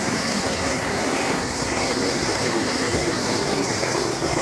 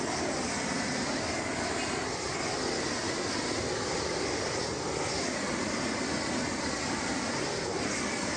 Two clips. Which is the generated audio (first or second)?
first